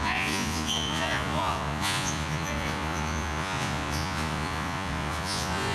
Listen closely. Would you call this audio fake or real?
fake